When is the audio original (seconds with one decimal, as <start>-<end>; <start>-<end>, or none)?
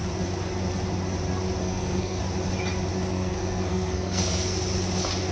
0.0-1.6; 2.2-3.1; 4.6-5.3